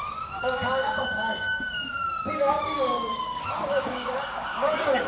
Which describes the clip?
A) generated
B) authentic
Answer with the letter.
A